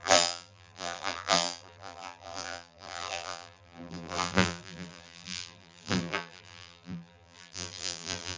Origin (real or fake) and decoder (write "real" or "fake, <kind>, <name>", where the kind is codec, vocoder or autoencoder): fake, vocoder, BigVGAN v2